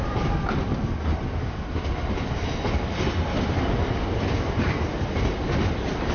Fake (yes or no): no